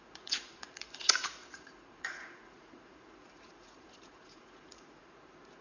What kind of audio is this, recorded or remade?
remade